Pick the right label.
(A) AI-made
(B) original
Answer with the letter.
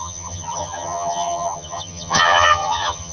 A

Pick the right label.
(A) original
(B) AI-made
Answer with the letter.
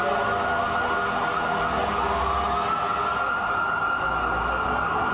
A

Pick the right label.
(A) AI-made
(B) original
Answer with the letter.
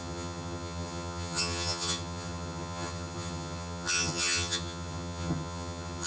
A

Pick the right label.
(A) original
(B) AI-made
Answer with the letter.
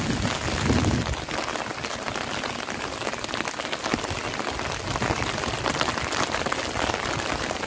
A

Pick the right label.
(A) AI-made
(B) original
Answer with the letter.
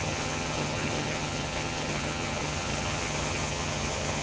A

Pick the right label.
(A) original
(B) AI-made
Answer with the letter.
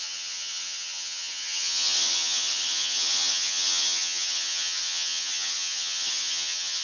B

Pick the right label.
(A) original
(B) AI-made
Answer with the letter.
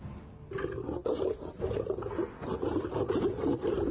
A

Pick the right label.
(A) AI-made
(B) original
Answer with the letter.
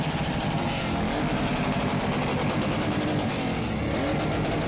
B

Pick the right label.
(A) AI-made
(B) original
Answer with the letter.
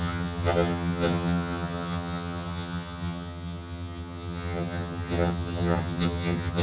A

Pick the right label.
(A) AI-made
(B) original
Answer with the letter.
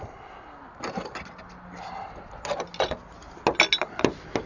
B